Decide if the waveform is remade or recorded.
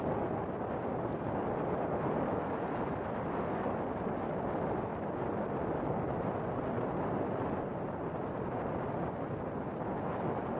recorded